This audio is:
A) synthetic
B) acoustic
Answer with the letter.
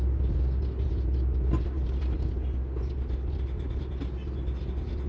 B